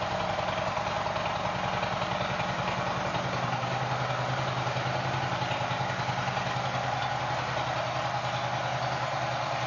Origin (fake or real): real